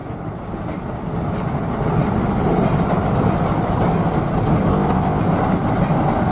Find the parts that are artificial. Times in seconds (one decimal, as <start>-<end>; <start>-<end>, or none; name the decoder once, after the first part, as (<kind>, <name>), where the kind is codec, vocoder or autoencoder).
4.7-5.2 (codec, ZipCodec)